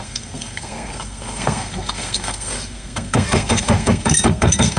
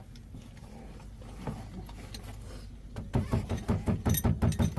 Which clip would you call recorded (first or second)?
second